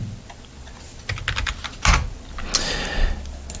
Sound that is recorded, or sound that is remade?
recorded